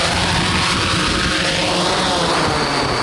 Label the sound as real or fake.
real